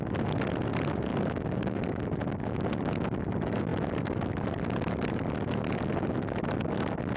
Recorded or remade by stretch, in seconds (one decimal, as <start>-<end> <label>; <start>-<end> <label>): 0.0-1.1 recorded; 1.1-1.8 remade; 1.8-7.2 recorded

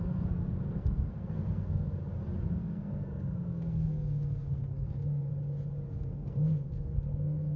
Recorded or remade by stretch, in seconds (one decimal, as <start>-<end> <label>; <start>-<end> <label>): 0.0-2.0 remade; 2.0-2.5 recorded; 2.5-5.3 remade; 5.3-5.9 recorded; 5.9-7.6 remade

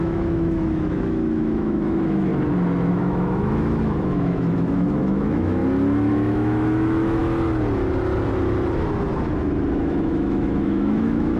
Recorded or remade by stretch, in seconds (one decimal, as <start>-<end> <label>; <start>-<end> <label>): 0.0-2.3 remade; 2.3-2.9 recorded; 2.9-5.6 remade; 5.6-6.1 recorded; 6.1-7.2 remade; 7.2-9.8 recorded; 9.8-11.4 remade

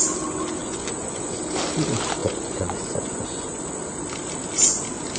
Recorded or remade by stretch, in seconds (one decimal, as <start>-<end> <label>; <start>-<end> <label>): 0.0-0.6 recorded; 0.6-1.4 remade; 1.4-2.2 recorded; 2.2-3.6 remade; 3.6-5.2 recorded

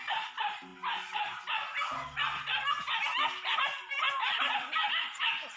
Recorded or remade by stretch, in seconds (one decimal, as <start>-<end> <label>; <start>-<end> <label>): 0.0-5.6 recorded